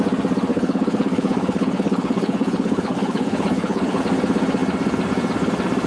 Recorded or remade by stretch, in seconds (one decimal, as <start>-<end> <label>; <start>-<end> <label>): 0.0-0.5 recorded; 0.5-4.0 remade; 4.0-5.9 recorded